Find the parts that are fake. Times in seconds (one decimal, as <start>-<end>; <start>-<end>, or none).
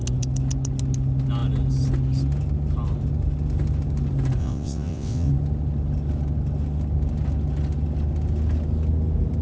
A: 4.4-5.3